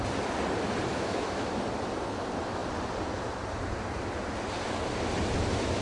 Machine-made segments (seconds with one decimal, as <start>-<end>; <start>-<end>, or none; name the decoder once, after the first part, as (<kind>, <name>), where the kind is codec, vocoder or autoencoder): 0.9-1.5 (autoencoder, DAC-VAE)